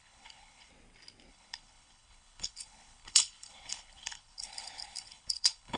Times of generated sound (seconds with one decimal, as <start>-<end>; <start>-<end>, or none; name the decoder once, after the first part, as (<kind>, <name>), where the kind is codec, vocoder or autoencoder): 0.0-0.7 (codec, HILCodec); 1.3-5.8